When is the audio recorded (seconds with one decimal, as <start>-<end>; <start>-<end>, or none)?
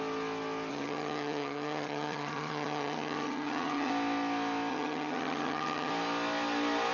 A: 0.0-0.7; 3.9-4.7; 5.9-6.9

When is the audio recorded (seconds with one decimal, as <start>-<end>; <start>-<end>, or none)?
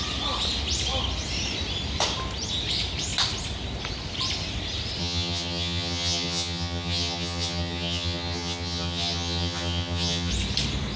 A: 0.0-5.0; 10.3-11.0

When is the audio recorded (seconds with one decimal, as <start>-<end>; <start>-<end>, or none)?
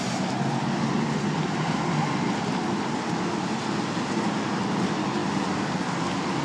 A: none